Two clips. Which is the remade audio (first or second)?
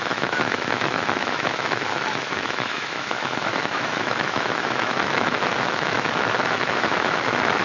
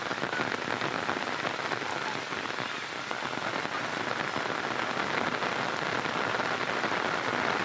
first